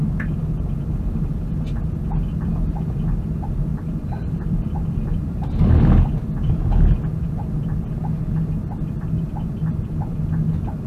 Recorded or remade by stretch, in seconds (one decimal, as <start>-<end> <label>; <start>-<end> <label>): 0.0-3.7 recorded; 3.7-5.6 remade; 5.6-10.9 recorded